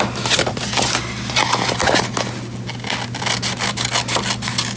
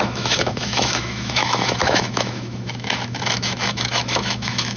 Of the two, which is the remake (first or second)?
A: second